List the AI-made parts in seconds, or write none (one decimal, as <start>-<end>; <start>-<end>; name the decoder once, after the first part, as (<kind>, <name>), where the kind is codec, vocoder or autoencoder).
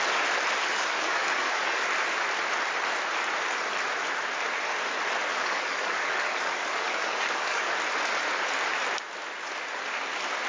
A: 0.7-1.9 (codec, DAC); 5.3-7.7